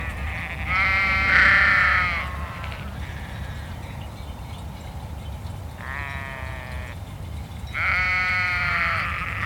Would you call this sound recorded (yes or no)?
no